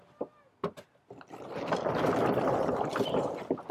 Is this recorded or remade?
recorded